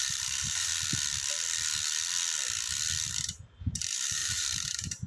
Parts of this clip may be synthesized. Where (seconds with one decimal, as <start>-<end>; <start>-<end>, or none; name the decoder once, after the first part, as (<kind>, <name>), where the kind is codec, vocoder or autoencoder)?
0.0-0.7 (vocoder, BigVGAN v2); 3.8-5.1